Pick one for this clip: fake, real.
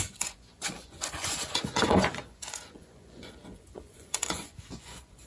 fake